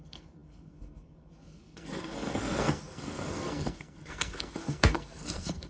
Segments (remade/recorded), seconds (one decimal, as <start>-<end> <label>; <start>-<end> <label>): 0.0-5.7 remade